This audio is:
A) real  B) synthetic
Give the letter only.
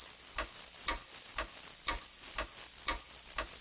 A